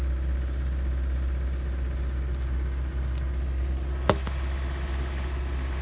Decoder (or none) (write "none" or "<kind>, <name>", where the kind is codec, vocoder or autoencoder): none